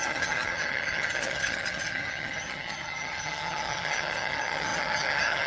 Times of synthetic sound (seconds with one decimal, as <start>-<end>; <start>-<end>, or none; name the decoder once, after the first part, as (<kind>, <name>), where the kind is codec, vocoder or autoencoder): 0.0-5.5 (vocoder, HiFi-GAN)